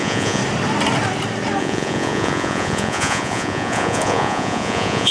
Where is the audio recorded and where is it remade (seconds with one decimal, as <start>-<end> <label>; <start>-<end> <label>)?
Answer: 0.0-0.4 remade; 0.4-1.6 recorded; 1.6-5.1 remade